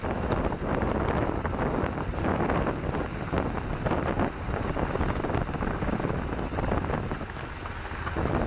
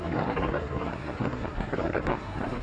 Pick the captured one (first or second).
first